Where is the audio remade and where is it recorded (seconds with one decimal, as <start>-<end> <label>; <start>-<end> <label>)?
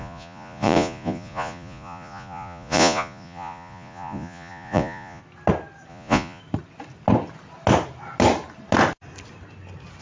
0.0-5.2 remade; 5.2-5.9 recorded; 5.9-6.4 remade; 6.4-10.0 recorded